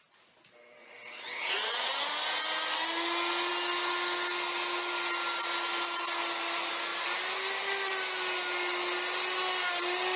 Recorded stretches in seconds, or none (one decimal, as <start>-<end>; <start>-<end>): 0.0-0.8; 1.9-10.2